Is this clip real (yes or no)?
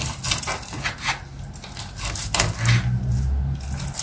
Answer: yes